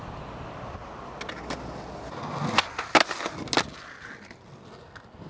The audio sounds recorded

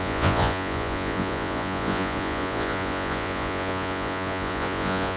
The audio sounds remade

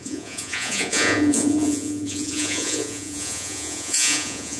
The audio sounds remade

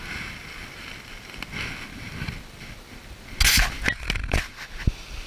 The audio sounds recorded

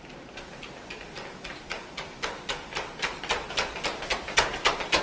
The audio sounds recorded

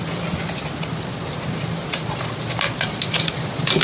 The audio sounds recorded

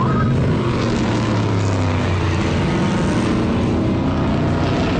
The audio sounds recorded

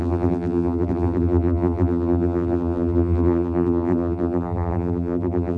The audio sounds remade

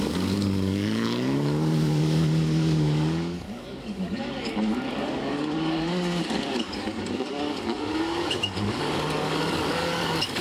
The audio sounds remade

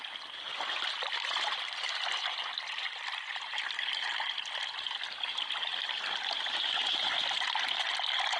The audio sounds recorded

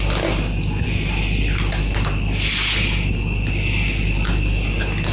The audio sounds recorded